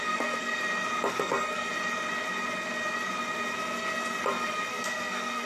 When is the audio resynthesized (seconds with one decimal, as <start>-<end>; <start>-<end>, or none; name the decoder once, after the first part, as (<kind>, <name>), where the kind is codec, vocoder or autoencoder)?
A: 0.0-0.6 (codec, SNAC); 1.1-1.7; 4.7-5.5